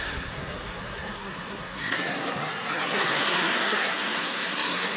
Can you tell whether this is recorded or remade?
remade